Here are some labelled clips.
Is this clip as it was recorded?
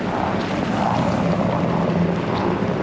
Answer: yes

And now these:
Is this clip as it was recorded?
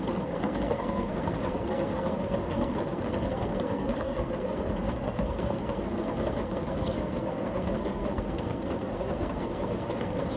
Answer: no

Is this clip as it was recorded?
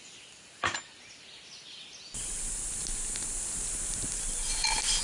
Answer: yes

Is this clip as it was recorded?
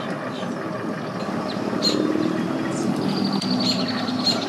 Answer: yes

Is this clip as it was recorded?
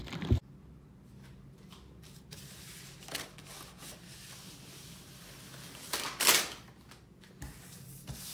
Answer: yes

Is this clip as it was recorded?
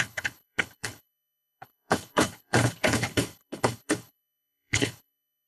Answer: no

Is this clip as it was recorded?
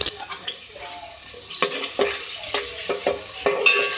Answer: yes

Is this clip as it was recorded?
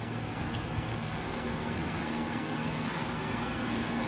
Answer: no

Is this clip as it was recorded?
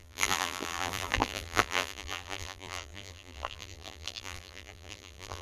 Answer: no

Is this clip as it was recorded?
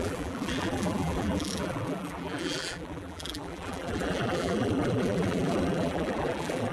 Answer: no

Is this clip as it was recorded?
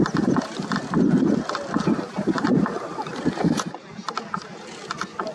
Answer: yes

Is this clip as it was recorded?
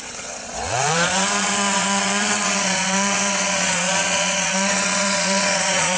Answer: no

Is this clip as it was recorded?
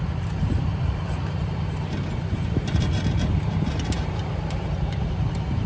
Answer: no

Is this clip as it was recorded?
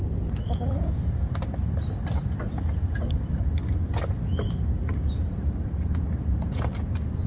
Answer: yes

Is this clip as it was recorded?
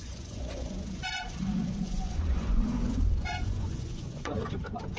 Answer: no